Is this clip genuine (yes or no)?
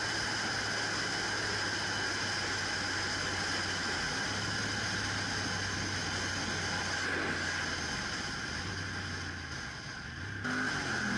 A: yes